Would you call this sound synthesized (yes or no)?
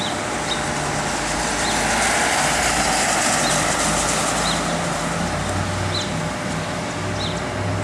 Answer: no